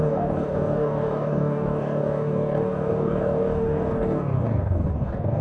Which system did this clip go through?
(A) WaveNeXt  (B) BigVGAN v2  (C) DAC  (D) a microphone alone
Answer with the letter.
C